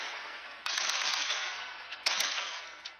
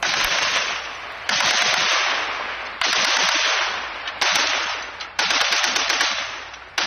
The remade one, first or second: first